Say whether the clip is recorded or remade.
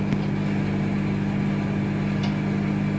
recorded